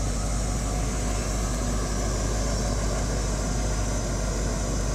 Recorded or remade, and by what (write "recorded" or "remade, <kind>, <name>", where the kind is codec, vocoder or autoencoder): recorded